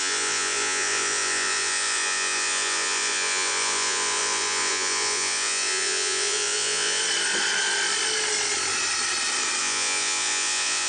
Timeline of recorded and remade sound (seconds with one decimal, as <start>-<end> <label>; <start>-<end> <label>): 0.0-7.0 remade; 7.0-9.6 recorded; 9.6-10.9 remade